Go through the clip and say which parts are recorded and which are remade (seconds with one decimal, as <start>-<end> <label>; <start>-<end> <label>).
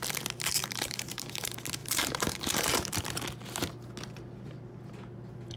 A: 0.0-0.6 recorded; 0.6-1.3 remade; 1.3-1.8 recorded; 1.8-3.0 remade; 3.0-5.6 recorded